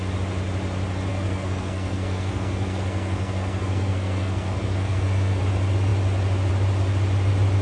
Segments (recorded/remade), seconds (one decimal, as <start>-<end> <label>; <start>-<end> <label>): 0.0-1.1 recorded; 1.1-5.4 remade; 5.4-7.6 recorded